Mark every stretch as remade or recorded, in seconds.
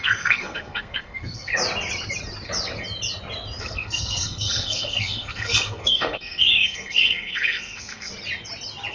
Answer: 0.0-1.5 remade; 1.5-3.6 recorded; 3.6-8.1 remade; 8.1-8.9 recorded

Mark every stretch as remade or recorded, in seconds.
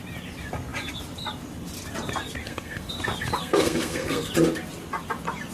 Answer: 0.0-2.4 recorded; 2.4-2.9 remade; 2.9-3.4 recorded; 3.4-4.3 remade; 4.3-5.5 recorded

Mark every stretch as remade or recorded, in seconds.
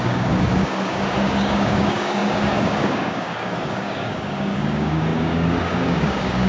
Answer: 0.0-6.5 remade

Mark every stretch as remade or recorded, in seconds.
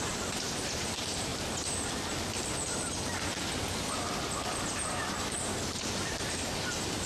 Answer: 0.0-1.3 remade; 1.3-4.7 recorded; 4.7-7.1 remade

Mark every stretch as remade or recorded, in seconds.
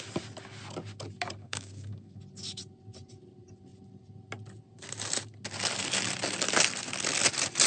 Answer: 0.0-1.4 recorded; 1.4-2.2 remade; 2.2-7.7 recorded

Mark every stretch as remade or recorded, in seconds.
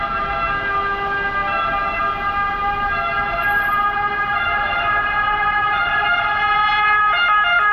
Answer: 0.0-7.7 recorded